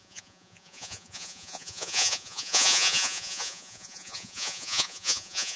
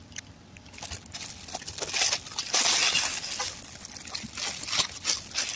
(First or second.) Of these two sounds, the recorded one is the second